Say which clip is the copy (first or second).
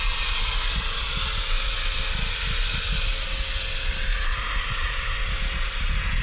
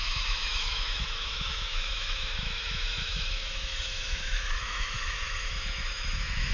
second